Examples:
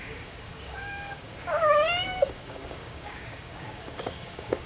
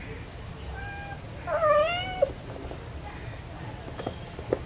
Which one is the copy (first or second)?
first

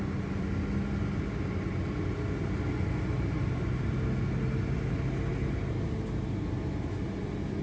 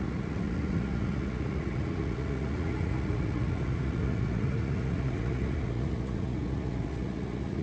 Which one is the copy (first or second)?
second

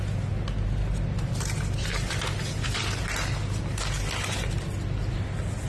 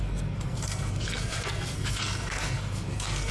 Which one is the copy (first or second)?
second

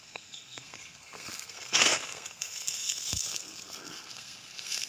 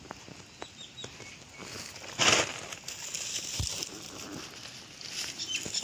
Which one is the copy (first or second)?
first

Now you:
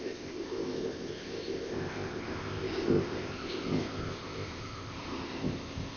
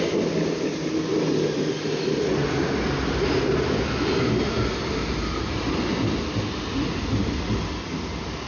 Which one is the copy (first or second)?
first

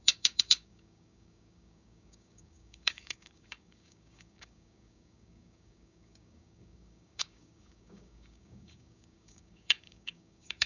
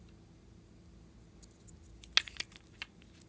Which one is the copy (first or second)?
first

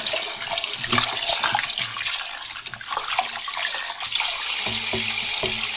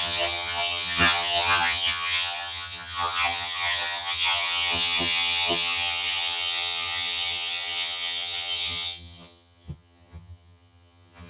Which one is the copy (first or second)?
second